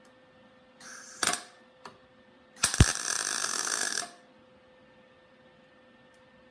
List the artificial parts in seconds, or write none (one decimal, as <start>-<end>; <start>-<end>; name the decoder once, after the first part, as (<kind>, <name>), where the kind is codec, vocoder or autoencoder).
3.4-4.0 (codec, SNAC)

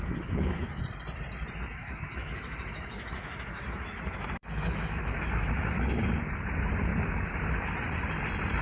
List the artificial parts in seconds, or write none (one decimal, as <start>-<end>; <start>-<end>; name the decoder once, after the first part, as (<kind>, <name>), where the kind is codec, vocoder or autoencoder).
0.0-0.8 (autoencoder, DAC-VAE); 1.8-6.0; 6.9-7.4

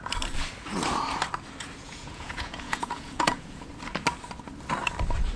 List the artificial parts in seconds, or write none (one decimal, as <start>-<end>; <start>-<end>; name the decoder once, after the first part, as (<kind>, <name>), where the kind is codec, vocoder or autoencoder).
1.8-3.7 (vocoder, Vocos)

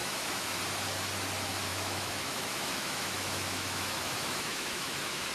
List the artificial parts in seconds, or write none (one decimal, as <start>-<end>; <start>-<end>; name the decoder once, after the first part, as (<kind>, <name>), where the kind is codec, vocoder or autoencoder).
0.0-0.6 (autoencoder, DAC-VAE); 1.7-5.3